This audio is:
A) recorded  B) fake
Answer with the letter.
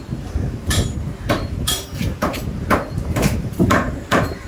B